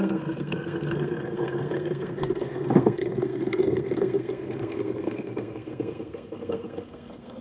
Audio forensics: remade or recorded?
remade